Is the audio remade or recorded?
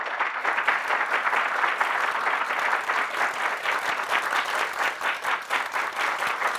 recorded